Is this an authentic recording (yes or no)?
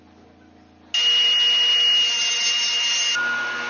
yes